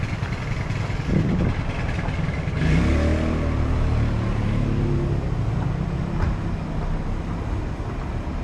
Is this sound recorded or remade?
recorded